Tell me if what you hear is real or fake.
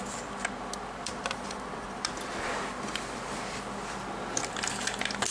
real